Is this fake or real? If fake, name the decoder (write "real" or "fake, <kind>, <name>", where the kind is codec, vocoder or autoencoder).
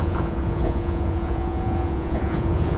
fake, vocoder, Vocos